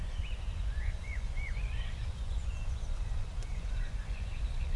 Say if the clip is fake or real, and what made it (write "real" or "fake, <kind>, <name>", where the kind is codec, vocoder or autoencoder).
fake, vocoder, Vocos